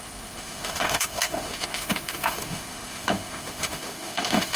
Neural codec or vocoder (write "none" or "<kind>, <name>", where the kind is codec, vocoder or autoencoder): autoencoder, DAC-VAE